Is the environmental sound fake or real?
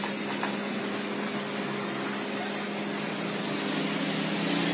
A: real